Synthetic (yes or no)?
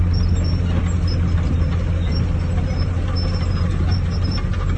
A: no